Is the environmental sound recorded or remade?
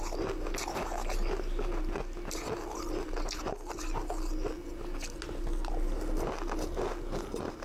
recorded